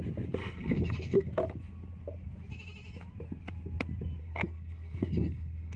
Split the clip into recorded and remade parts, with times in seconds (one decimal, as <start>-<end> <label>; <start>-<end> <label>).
0.0-0.4 recorded; 0.4-1.3 remade; 1.3-4.2 recorded; 4.2-5.8 remade